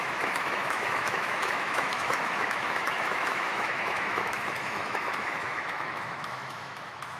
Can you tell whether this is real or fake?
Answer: fake